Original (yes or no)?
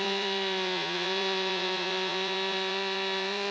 no